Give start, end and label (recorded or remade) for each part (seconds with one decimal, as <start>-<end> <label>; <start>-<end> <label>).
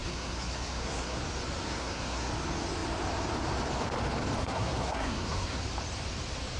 0.0-1.2 remade; 1.2-1.6 recorded; 1.6-2.3 remade; 2.3-4.4 recorded; 4.4-5.6 remade; 5.6-6.6 recorded